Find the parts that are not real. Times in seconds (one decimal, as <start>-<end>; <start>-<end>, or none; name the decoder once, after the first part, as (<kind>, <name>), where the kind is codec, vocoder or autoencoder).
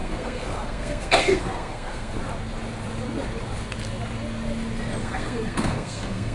0.0-2.2 (codec, SNAC); 5.0-6.3